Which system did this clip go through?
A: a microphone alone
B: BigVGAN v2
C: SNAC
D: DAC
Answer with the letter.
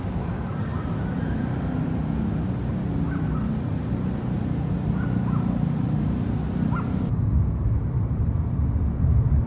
A